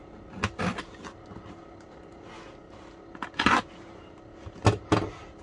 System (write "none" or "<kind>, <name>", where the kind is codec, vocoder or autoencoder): none